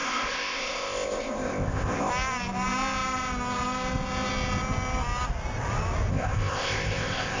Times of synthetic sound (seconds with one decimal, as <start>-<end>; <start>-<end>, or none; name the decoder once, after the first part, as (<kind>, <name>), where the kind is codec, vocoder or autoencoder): 0.0-2.1 (codec, ZipCodec); 6.1-7.4